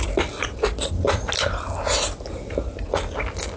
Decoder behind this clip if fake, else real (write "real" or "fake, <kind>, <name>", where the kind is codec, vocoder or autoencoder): real